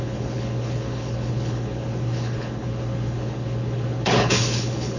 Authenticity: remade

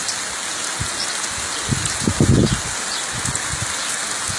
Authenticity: recorded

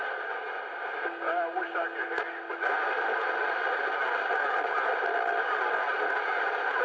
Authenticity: recorded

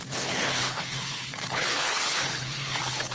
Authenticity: remade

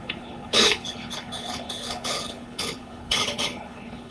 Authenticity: remade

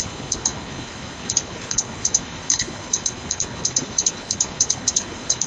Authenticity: remade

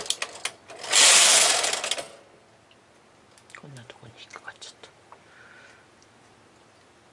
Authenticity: recorded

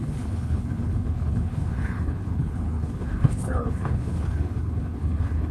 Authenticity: remade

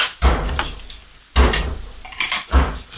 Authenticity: recorded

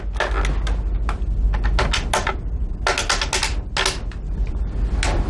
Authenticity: recorded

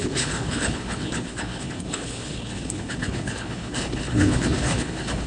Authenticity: remade